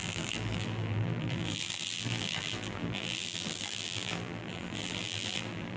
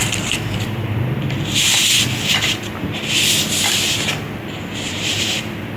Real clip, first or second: second